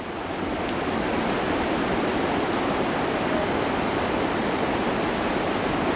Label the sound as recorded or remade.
recorded